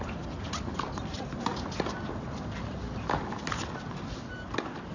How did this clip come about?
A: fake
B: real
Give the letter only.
B